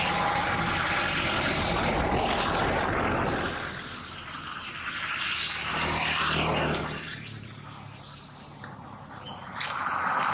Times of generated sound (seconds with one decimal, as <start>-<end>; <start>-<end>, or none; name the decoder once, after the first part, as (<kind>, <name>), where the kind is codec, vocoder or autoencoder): 5.6-7.5 (vocoder, BigVGAN v2)